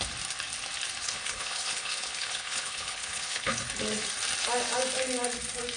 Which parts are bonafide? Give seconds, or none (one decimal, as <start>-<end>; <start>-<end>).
0.0-1.0; 3.6-5.8